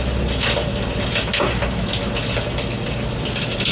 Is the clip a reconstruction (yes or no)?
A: no